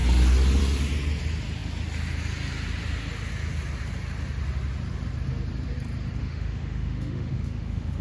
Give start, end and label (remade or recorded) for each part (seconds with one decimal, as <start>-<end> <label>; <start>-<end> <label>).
0.0-6.2 recorded; 6.2-8.0 remade